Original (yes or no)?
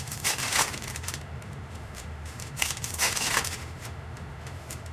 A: no